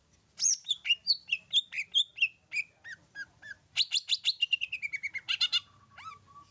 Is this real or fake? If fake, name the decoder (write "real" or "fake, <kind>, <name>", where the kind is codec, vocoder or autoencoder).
real